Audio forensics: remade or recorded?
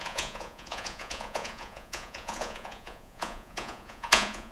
remade